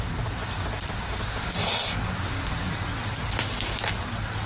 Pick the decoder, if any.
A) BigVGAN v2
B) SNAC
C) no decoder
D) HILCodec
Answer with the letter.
C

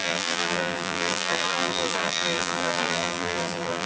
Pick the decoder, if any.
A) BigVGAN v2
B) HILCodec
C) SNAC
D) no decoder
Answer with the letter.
A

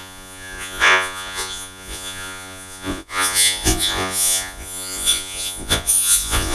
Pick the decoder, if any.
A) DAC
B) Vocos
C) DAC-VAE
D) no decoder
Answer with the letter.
B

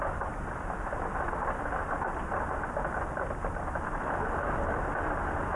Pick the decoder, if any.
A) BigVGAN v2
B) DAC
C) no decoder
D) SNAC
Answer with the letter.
C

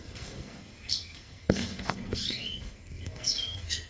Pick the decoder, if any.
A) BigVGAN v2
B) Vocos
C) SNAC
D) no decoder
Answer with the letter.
C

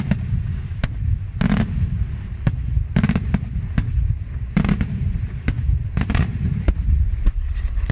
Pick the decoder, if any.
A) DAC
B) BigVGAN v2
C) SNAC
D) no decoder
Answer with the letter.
B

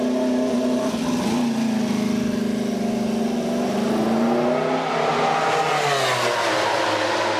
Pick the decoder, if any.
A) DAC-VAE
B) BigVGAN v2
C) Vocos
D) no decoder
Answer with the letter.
D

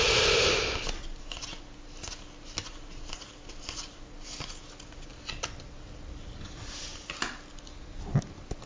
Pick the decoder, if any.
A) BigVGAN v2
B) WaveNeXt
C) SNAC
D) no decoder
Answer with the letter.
D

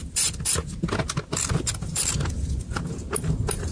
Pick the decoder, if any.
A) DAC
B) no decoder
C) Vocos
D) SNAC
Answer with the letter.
B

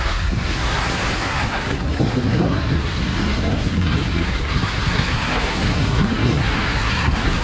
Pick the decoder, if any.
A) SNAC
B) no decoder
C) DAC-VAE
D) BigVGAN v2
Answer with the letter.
A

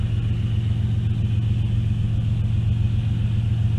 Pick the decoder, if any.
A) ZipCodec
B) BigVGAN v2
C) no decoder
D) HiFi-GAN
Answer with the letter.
C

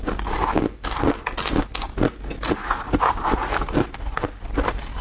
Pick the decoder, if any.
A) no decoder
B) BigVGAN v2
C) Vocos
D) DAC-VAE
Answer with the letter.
A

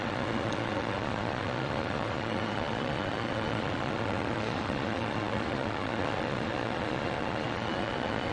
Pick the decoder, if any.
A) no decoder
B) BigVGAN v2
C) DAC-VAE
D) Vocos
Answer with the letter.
D